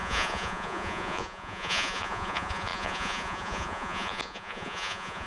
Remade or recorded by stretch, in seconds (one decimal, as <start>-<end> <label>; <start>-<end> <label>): 0.0-5.3 remade